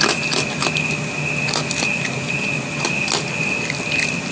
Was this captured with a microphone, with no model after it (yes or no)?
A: yes